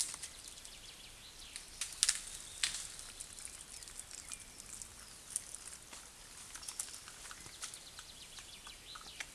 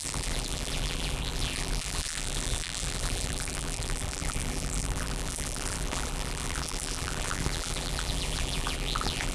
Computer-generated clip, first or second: second